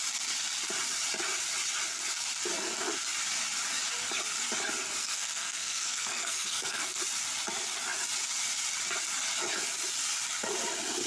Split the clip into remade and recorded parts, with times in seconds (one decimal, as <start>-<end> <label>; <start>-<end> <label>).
0.0-5.0 recorded; 5.0-7.0 remade; 7.0-11.1 recorded

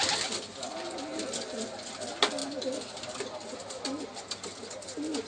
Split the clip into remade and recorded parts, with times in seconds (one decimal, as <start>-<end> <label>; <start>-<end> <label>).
0.0-5.3 recorded